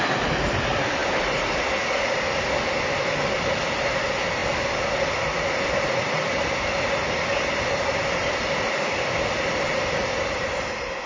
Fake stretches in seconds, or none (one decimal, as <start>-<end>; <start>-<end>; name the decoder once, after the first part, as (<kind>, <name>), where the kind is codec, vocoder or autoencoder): none